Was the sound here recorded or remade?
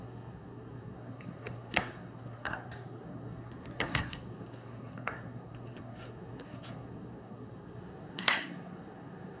remade